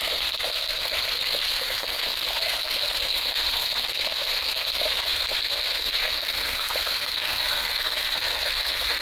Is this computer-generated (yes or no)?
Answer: yes